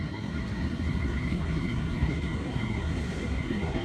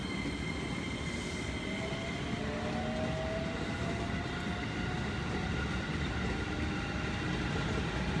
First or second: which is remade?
first